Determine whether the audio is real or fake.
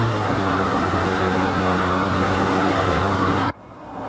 fake